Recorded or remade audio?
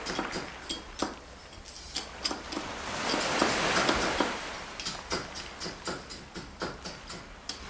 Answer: recorded